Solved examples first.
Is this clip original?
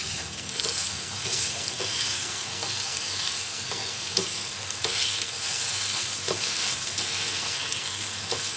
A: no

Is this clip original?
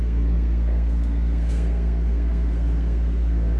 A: no